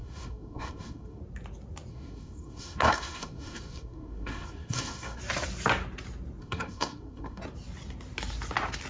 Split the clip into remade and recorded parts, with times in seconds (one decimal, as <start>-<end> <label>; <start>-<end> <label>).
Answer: 0.0-1.2 remade; 1.2-1.9 recorded; 1.9-5.2 remade; 5.2-6.4 recorded; 6.4-7.4 remade; 7.4-8.9 recorded